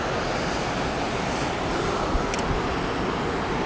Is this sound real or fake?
real